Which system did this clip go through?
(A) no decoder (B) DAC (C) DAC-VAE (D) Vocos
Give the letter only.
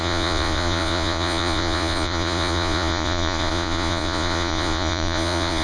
D